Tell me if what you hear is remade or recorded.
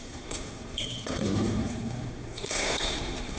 remade